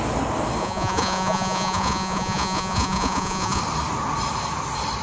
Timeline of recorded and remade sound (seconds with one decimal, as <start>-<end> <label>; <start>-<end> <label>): 0.0-0.6 recorded; 0.6-3.6 remade; 3.6-5.0 recorded